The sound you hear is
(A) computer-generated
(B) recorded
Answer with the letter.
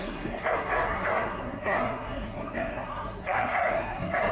A